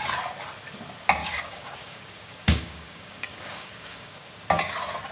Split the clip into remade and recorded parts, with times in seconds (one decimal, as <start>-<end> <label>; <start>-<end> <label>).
0.0-1.2 recorded; 1.2-4.3 remade; 4.3-5.1 recorded